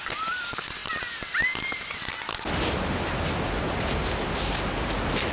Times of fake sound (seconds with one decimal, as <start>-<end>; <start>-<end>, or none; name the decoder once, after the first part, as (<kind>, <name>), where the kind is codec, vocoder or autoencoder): none